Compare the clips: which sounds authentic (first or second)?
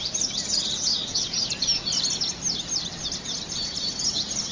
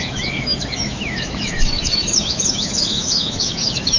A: first